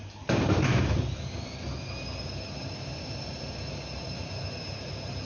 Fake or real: real